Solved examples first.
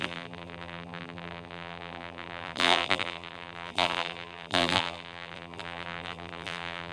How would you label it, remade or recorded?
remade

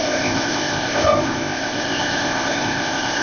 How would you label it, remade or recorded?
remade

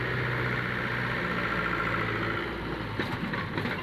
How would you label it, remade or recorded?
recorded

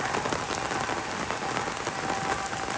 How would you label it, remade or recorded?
recorded